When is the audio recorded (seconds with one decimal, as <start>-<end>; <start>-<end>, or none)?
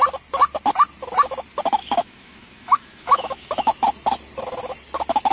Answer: 0.0-1.8; 3.7-5.3